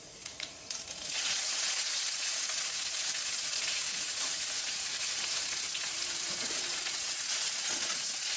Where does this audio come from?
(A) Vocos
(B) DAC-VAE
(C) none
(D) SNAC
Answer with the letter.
A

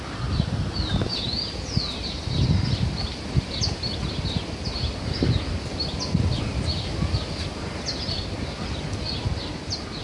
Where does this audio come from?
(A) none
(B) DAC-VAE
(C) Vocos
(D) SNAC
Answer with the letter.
A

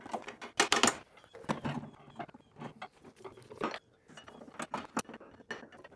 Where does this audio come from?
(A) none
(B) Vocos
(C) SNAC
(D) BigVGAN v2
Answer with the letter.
A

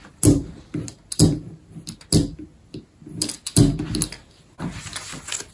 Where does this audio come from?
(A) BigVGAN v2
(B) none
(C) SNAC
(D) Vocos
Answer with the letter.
B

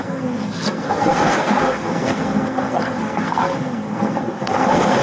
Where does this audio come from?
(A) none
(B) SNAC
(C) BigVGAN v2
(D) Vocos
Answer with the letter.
B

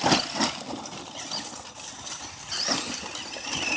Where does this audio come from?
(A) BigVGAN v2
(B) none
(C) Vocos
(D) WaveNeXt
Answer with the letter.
B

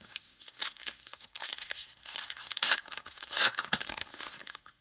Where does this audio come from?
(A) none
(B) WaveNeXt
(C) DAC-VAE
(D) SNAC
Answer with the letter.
D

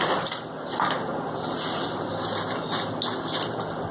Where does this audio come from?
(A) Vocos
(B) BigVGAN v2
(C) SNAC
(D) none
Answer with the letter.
D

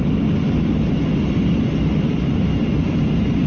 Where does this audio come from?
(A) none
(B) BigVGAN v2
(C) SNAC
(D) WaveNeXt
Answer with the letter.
A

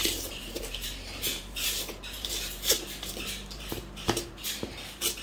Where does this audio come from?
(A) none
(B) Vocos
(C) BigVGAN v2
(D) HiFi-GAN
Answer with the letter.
C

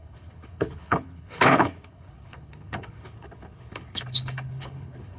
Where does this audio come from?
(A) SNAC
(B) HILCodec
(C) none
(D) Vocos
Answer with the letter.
B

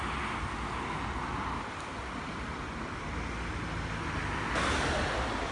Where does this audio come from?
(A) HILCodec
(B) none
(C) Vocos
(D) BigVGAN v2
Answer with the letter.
B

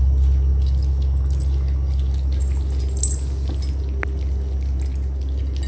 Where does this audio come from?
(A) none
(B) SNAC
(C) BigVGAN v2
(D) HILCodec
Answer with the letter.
A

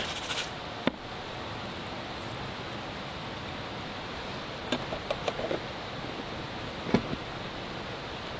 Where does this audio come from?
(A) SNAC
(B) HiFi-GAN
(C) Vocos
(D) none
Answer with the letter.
D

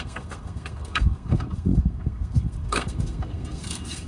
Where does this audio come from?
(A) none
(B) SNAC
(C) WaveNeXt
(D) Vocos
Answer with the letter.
B